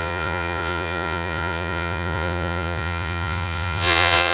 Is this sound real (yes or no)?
no